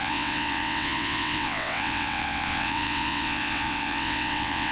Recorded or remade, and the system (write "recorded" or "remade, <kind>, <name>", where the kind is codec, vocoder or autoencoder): remade, vocoder, WaveNeXt